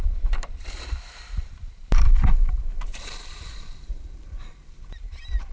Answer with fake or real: fake